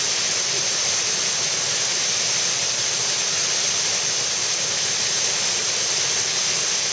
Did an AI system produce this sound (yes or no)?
no